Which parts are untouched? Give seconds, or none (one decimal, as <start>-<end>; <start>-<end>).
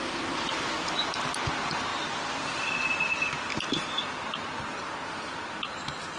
0.0-6.2